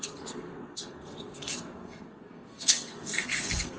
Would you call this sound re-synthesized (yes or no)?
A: yes